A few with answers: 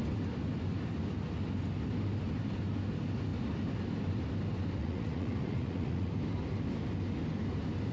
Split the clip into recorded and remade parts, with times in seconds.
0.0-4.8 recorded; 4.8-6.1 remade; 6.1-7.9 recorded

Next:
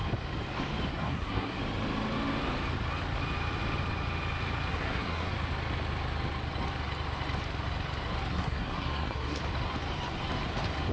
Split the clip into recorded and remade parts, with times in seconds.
0.0-0.9 recorded; 0.9-1.6 remade; 1.6-4.7 recorded; 4.7-5.3 remade; 5.3-8.3 recorded; 8.3-9.4 remade; 9.4-10.9 recorded

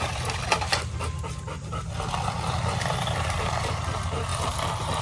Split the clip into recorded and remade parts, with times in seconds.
0.0-5.0 recorded